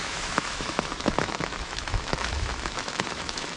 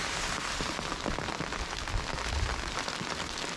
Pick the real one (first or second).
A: second